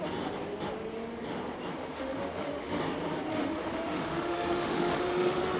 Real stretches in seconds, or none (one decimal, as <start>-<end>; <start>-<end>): 0.0-1.7; 2.8-3.3